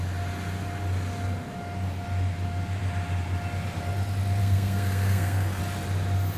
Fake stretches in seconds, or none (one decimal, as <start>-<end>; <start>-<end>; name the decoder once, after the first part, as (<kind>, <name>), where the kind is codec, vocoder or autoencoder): 4.4-5.6 (codec, SNAC)